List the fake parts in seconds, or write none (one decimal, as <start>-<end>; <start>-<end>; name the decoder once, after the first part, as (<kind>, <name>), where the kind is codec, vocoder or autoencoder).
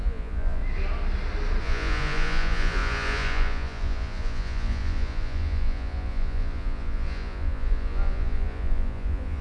0.0-0.6 (vocoder, Vocos); 1.6-9.4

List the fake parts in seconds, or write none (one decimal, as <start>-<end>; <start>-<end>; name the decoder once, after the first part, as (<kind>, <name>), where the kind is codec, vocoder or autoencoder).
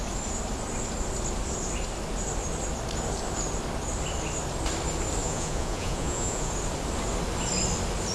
5.2-6.5 (vocoder, Vocos)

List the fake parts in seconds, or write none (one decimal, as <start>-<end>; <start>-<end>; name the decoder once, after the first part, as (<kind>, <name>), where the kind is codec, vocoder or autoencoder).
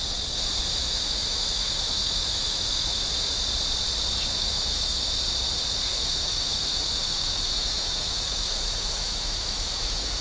0.8-3.0 (autoencoder, DAC-VAE); 4.3-5.0; 5.9-10.2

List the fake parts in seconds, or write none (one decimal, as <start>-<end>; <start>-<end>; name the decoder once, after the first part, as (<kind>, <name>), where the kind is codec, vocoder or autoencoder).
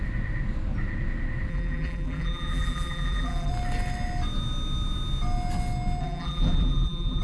1.5-3.5 (vocoder, BigVGAN v2); 6.0-7.2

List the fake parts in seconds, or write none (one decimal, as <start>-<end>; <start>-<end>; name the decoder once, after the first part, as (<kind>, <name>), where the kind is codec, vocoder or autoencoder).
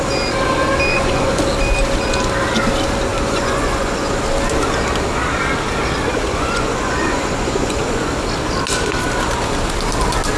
0.9-1.4 (vocoder, Vocos); 3.1-4.1; 6.1-8.1